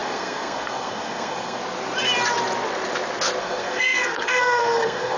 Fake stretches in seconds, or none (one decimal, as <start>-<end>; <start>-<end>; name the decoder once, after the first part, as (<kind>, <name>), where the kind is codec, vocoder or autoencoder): 0.0-1.6 (codec, SNAC); 3.4-5.2

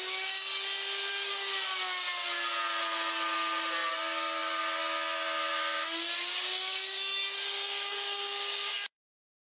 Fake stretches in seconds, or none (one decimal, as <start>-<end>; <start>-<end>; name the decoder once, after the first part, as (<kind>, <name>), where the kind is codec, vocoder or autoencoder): 0.0-0.5 (codec, DAC); 1.1-1.5; 3.9-9.5